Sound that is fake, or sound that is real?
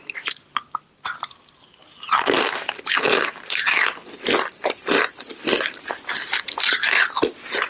real